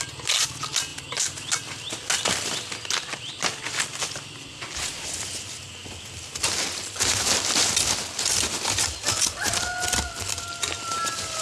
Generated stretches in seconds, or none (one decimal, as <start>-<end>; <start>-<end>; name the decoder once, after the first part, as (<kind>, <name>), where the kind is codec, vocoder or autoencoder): none

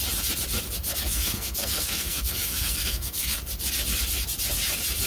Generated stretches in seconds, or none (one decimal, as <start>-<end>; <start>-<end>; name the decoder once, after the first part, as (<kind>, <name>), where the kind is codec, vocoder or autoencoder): 1.0-3.4 (codec, SNAC)

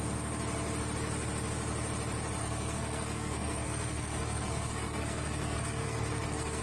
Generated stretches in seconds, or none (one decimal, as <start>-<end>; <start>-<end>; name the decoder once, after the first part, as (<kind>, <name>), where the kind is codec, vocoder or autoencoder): 2.4-6.6 (codec, SNAC)

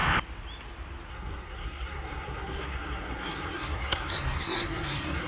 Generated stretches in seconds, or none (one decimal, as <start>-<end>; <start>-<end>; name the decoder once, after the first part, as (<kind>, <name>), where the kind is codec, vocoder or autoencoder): 1.1-5.3 (codec, SNAC)

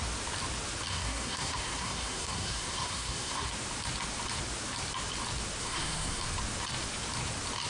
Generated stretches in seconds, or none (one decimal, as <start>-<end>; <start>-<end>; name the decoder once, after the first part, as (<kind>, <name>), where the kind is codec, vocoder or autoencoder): 0.9-3.5 (codec, SNAC); 5.6-6.2